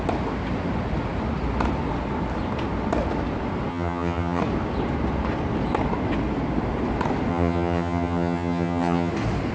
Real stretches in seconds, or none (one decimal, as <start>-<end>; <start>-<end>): 0.0-3.7; 4.4-7.3; 9.1-9.5